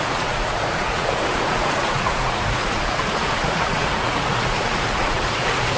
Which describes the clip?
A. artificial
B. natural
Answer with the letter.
A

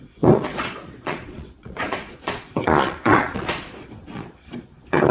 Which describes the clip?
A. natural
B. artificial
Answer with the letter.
B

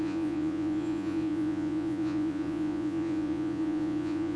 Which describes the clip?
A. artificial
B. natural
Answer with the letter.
A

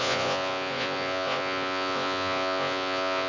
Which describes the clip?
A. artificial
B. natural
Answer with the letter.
A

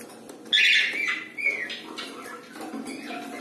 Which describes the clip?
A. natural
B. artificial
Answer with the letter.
A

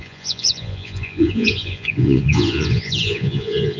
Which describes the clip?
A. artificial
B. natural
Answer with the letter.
A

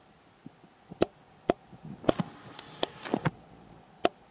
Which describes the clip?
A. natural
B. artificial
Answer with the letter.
A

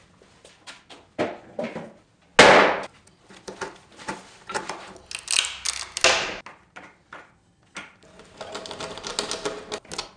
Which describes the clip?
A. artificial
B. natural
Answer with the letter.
B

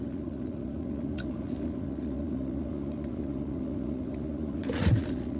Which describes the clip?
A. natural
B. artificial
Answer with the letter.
B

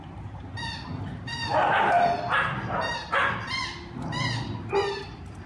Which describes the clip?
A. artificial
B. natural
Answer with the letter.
B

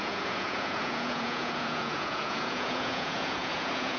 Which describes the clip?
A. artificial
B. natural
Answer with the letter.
A